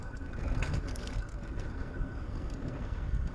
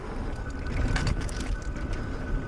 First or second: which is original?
second